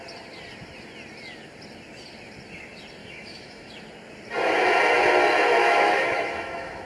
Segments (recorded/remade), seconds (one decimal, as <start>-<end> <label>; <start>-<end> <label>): 0.0-3.0 recorded; 3.0-3.7 remade; 3.7-5.6 recorded; 5.6-6.9 remade

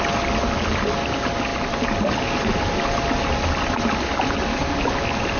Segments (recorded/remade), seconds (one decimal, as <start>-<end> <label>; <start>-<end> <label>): 0.0-5.4 recorded

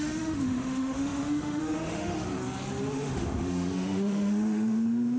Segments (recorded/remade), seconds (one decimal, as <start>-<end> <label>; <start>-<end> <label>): 0.0-2.4 remade; 2.4-2.9 recorded; 2.9-5.2 remade

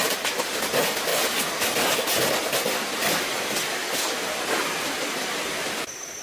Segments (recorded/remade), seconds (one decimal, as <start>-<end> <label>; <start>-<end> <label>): 0.0-6.2 recorded